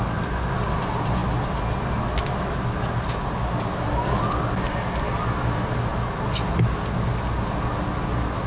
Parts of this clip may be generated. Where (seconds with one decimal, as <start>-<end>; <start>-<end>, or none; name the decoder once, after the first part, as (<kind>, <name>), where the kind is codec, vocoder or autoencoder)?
none